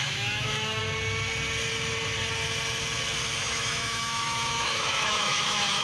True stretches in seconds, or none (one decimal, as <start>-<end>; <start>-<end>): 0.8-3.4